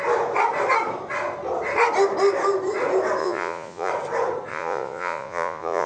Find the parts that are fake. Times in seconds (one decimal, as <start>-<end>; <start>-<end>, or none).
3.2-3.9; 4.5-5.9